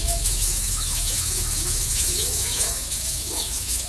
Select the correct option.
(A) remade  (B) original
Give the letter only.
A